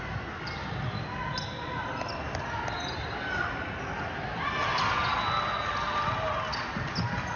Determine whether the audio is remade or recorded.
recorded